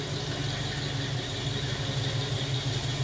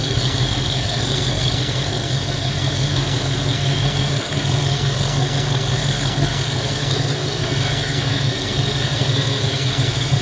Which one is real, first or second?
first